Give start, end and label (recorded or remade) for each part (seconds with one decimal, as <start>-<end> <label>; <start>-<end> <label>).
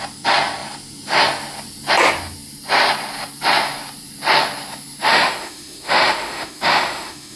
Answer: 0.0-5.1 recorded; 5.1-7.4 remade